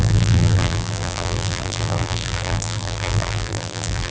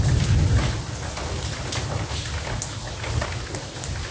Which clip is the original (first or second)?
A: second